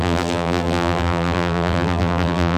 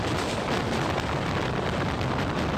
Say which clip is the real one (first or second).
second